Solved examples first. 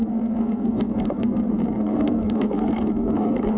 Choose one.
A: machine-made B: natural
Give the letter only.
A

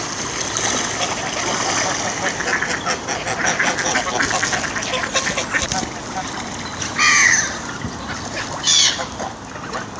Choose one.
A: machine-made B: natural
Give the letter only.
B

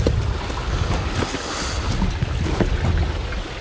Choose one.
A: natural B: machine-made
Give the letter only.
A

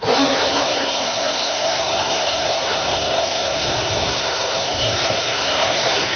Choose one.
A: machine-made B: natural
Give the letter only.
A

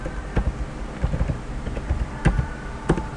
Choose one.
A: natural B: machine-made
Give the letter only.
A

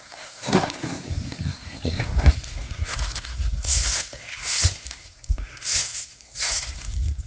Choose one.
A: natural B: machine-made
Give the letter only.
B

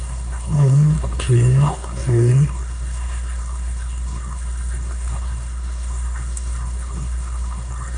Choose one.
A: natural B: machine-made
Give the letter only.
B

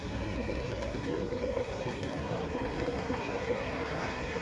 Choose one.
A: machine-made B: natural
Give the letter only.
A